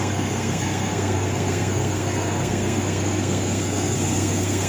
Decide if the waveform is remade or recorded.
remade